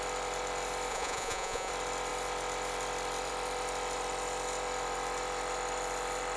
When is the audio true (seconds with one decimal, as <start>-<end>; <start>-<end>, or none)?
0.0-0.9; 1.7-6.4